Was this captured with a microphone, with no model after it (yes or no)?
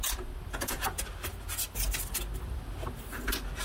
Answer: yes